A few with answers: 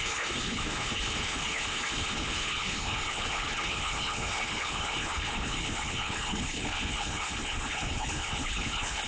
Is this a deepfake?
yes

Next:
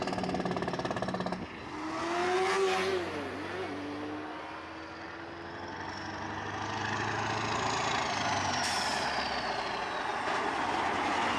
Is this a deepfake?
no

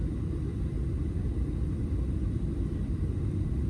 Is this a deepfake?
no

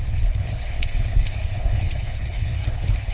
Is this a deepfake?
yes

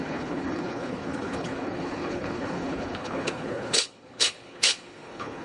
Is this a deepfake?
yes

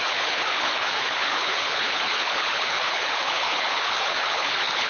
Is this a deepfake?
yes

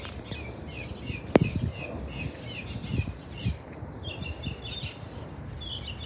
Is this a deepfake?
no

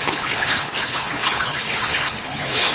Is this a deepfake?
yes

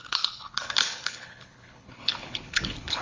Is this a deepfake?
yes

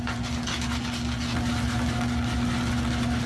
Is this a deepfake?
no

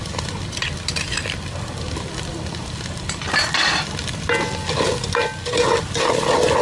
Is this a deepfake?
no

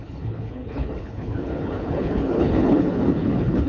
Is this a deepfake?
yes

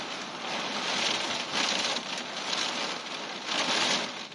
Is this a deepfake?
no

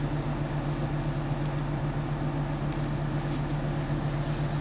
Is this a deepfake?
no